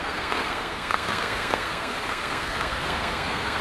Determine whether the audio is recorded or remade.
remade